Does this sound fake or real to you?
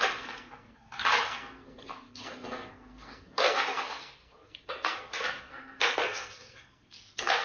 fake